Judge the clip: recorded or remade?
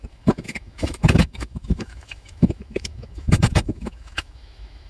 remade